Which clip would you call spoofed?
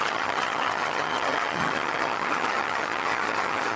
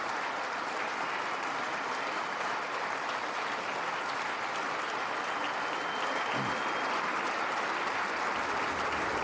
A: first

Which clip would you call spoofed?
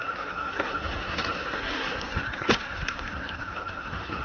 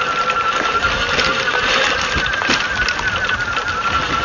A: first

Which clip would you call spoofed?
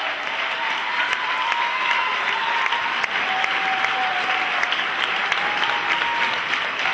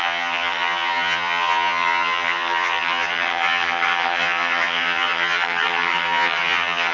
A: second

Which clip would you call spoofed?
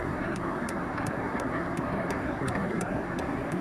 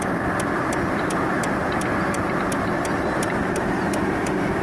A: first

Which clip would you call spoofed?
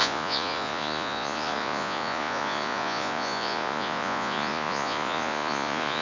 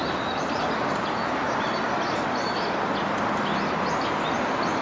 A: first